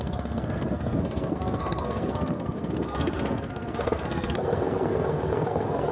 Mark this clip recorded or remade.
remade